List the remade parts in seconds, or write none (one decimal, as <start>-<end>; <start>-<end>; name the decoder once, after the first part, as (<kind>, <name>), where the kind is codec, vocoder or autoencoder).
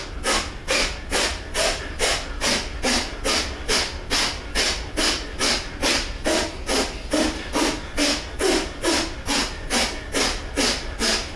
none